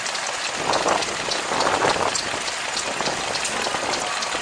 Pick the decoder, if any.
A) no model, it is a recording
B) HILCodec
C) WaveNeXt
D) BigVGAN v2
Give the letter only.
A